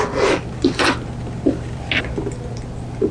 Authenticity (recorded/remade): recorded